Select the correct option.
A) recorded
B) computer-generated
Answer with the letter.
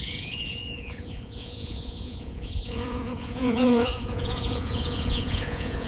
B